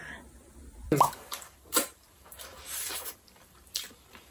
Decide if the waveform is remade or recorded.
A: remade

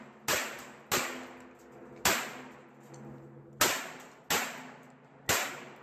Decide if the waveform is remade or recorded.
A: recorded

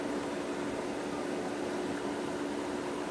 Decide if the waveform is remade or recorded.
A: recorded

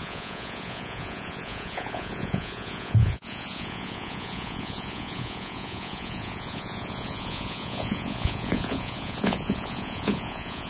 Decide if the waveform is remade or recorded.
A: remade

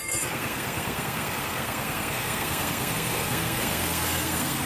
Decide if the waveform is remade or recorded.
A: remade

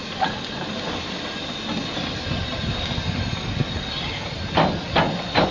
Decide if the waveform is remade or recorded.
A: recorded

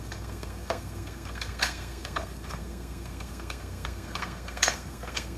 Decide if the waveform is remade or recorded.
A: remade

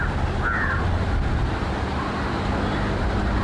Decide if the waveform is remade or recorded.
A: recorded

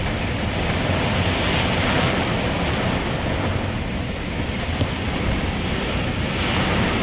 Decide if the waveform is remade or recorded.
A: recorded